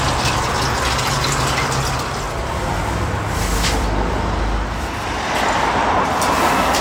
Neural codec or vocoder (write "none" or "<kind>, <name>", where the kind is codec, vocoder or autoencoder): none